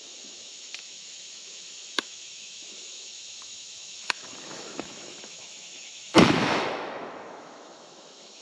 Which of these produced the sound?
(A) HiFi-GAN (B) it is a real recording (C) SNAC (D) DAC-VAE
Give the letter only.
D